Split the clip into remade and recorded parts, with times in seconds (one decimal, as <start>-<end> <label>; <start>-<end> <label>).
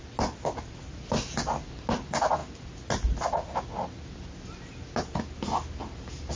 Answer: 0.0-6.3 recorded